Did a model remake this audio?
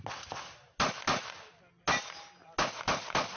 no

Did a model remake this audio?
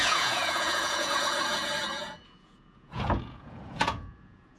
yes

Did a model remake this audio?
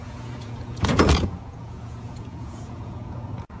yes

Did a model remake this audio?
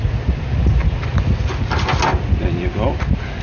no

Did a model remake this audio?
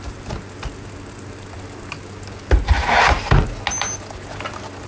no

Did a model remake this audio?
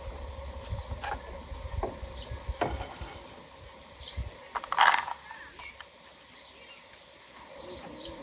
no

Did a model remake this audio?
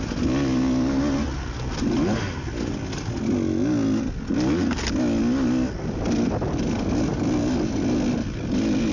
no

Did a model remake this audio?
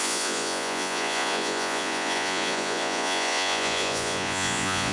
yes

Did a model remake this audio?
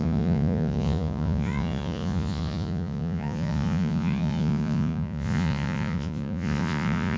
yes